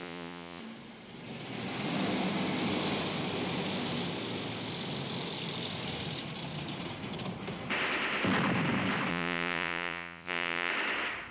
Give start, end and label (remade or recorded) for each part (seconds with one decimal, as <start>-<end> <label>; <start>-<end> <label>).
0.0-0.6 remade; 0.6-9.1 recorded; 9.1-10.7 remade; 10.7-11.3 recorded